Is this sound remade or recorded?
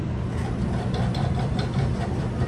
recorded